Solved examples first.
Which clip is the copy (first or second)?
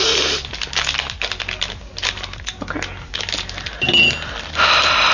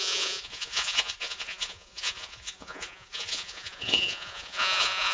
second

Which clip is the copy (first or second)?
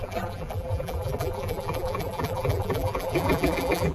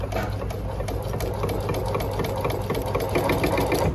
first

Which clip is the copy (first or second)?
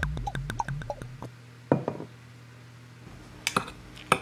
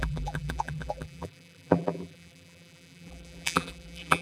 second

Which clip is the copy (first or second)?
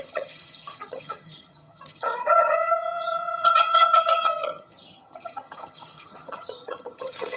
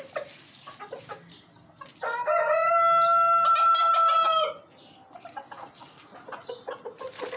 first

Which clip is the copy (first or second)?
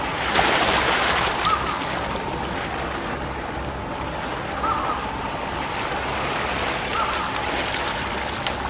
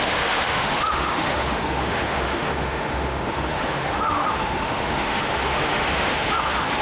second